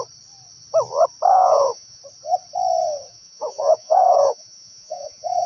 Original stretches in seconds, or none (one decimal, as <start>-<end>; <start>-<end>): 0.0-1.3; 2.0-3.1

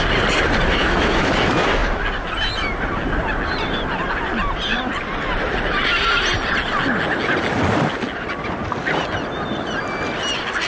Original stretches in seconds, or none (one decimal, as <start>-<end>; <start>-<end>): 0.0-0.8; 1.3-10.7

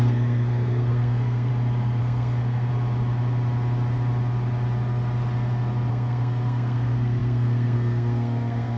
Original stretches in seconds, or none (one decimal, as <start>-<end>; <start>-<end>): 1.5-2.0; 2.7-5.9

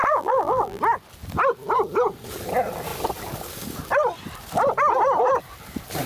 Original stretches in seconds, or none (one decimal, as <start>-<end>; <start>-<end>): 0.8-6.1

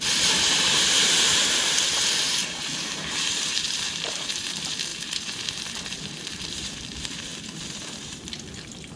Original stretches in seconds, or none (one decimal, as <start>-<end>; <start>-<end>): 7.3-8.0

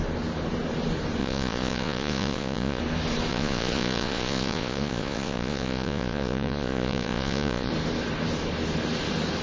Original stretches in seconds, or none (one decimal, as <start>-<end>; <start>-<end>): 0.0-1.2; 2.8-3.3; 7.7-9.4